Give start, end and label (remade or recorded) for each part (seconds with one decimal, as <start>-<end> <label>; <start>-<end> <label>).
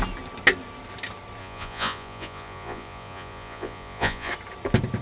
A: 0.0-1.4 recorded; 1.4-4.3 remade; 4.3-5.0 recorded